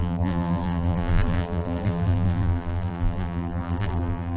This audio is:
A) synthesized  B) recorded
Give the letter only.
A